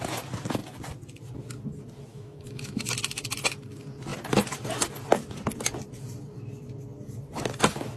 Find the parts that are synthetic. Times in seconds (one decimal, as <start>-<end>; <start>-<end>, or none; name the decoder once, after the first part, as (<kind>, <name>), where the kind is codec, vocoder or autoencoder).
2.1-2.9 (autoencoder, DAC-VAE)